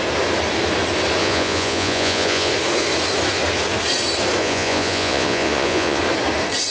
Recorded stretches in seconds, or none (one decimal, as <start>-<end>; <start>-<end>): 0.0-1.2; 2.5-4.4; 6.0-6.7